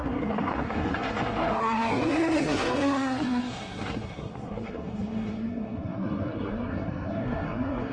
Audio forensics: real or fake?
fake